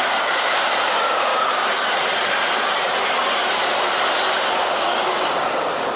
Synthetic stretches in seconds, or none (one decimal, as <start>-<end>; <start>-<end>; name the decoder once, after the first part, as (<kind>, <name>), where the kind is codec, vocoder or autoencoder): 0.0-1.3 (codec, DAC); 4.7-6.0